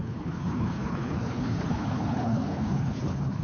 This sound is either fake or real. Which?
fake